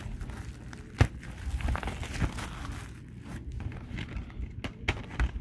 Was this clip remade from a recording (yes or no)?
no